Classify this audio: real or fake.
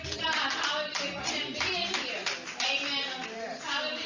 fake